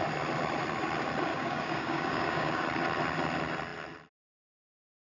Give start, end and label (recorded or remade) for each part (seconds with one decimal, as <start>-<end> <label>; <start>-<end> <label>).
0.0-1.3 recorded; 1.3-2.6 remade; 2.6-5.2 recorded

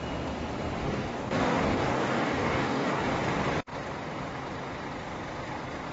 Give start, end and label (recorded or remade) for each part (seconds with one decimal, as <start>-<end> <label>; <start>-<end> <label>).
0.0-0.8 recorded; 0.8-3.0 remade; 3.0-5.9 recorded

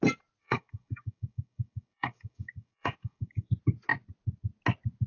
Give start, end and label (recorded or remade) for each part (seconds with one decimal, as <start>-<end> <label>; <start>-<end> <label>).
0.0-0.4 recorded; 0.4-3.5 remade; 3.5-5.1 recorded

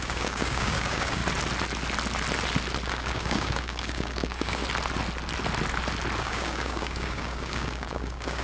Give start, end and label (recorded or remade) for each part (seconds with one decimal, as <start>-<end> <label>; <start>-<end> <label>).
0.0-1.2 remade; 1.2-2.9 recorded; 2.9-4.6 remade; 4.6-6.2 recorded; 6.2-8.4 remade

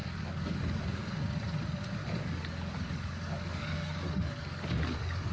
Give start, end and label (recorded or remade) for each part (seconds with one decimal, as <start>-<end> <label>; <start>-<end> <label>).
0.0-1.0 remade; 1.0-2.0 recorded; 2.0-5.3 remade

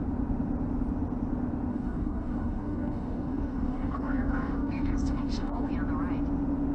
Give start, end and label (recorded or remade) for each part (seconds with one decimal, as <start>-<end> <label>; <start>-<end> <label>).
0.0-1.7 recorded; 1.7-5.7 remade; 5.7-6.7 recorded

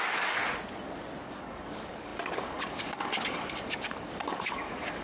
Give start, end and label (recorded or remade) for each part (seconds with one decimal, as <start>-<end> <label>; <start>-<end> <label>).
0.0-0.4 remade; 0.4-1.3 recorded; 1.3-5.0 remade